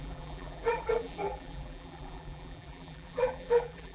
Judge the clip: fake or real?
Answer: fake